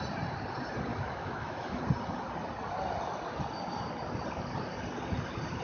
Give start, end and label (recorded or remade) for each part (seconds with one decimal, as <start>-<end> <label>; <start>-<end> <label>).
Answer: 0.0-0.9 recorded; 0.9-1.8 remade; 1.8-5.6 recorded